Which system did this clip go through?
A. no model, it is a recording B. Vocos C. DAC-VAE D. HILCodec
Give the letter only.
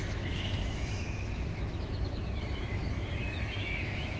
C